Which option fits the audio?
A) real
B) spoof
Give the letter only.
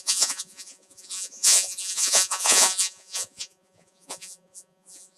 B